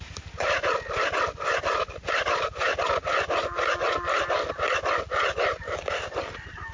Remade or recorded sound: recorded